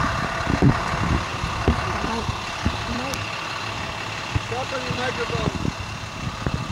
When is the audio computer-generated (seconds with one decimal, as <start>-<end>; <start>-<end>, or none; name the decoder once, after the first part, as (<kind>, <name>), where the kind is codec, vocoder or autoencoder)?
1.3-3.6 (vocoder, BigVGAN v2)